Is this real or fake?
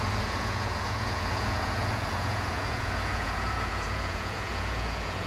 fake